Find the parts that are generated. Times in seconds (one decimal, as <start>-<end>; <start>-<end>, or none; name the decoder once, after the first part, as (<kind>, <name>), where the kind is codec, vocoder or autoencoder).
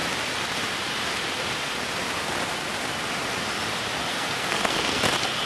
4.1-5.0 (codec, SNAC)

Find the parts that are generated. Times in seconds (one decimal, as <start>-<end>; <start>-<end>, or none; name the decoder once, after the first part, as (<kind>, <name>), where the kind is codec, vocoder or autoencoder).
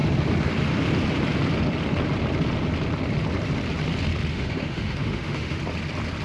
4.3-5.6 (autoencoder, DAC-VAE)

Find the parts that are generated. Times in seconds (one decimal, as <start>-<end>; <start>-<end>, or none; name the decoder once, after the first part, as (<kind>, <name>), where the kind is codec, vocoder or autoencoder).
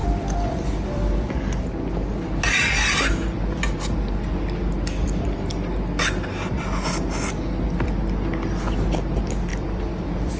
0.0-1.4 (vocoder, BigVGAN v2); 9.5-10.4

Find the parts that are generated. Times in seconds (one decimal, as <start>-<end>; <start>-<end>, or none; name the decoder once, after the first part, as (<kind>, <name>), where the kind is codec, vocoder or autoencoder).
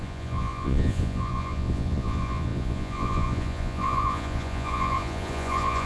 0.0-5.9 (vocoder, Vocos)